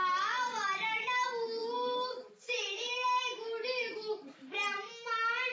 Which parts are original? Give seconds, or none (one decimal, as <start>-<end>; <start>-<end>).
0.0-1.6; 4.9-5.5